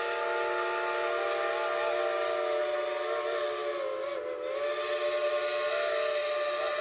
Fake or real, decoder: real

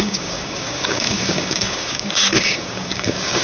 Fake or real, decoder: fake, codec, DAC